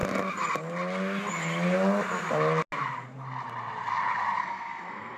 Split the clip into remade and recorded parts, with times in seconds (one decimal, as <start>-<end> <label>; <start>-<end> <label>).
0.0-4.4 recorded; 4.4-5.2 remade